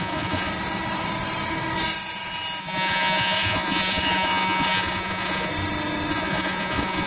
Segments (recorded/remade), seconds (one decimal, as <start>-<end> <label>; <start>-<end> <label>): 0.0-0.5 remade; 0.5-2.6 recorded; 2.6-5.5 remade; 5.5-6.1 recorded; 6.1-7.1 remade